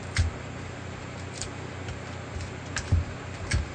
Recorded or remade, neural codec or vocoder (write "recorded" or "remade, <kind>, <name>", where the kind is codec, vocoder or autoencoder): recorded